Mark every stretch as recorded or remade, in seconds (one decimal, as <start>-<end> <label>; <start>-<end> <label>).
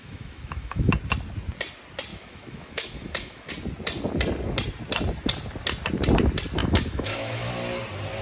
0.0-0.9 remade; 0.9-2.1 recorded; 2.1-3.5 remade; 3.5-6.6 recorded; 6.6-7.5 remade; 7.5-8.2 recorded